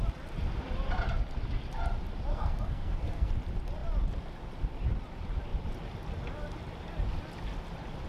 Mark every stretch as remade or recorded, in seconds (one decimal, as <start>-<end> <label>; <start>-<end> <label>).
0.0-2.3 recorded; 2.3-3.3 remade; 3.3-8.1 recorded